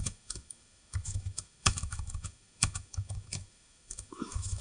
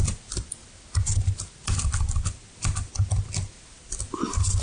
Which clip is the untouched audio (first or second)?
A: second